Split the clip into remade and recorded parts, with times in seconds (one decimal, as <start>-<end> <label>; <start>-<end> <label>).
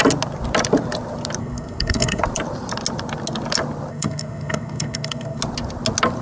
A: 0.0-1.4 recorded; 1.4-2.2 remade; 2.2-3.9 recorded; 3.9-5.4 remade; 5.4-6.2 recorded